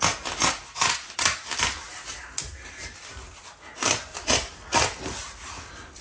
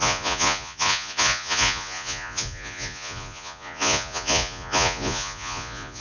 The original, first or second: first